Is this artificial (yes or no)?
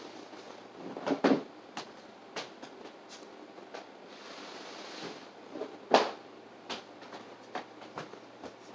no